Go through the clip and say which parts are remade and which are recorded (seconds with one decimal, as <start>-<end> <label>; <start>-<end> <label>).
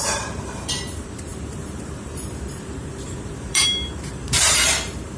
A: 0.0-5.2 remade